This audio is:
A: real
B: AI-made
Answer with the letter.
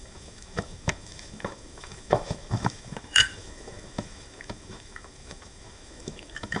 B